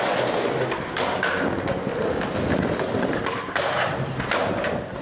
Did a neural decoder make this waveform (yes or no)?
no